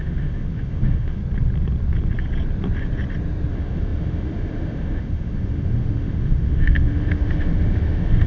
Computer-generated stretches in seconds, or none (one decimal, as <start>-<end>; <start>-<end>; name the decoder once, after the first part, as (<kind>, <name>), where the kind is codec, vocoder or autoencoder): 0.0-1.2 (autoencoder, DAC-VAE); 3.5-8.3